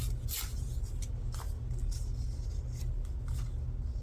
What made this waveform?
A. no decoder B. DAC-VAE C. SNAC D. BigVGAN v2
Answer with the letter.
A